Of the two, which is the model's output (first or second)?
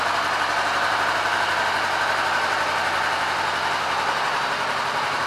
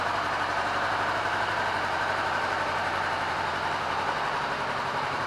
second